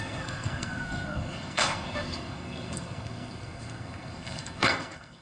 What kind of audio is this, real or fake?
fake